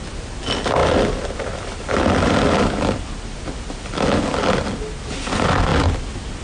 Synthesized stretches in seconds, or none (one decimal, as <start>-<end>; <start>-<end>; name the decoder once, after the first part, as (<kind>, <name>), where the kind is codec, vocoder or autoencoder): 0.8-3.5 (vocoder, BigVGAN v2); 5.7-6.4